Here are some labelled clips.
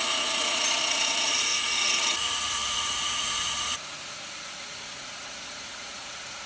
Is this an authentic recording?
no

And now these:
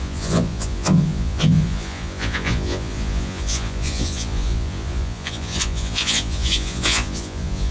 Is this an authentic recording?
no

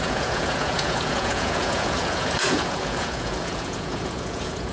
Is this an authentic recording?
no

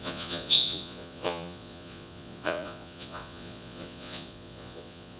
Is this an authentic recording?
no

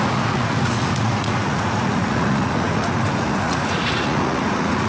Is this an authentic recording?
no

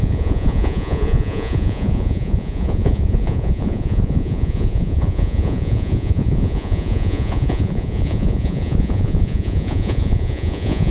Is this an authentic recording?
no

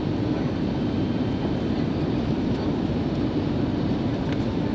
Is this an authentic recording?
yes